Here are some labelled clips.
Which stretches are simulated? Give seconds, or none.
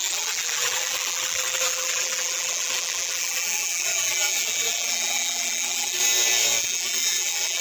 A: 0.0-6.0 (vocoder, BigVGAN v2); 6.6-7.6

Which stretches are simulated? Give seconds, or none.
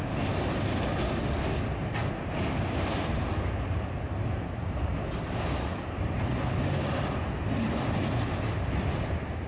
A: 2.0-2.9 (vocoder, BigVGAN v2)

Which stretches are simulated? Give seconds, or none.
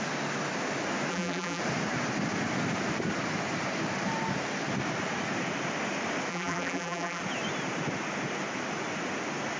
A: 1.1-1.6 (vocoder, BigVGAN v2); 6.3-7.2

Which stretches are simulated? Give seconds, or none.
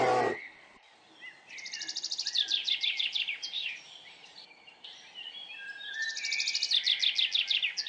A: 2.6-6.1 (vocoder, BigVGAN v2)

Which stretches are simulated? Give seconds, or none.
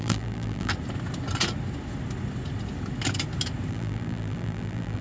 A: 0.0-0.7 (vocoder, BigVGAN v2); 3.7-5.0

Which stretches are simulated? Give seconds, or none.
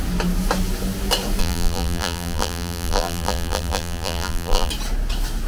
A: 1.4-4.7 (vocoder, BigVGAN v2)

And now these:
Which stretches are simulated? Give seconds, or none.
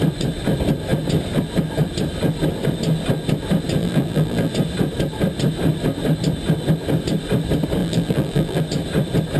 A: 3.8-4.5 (vocoder, BigVGAN v2); 7.8-8.6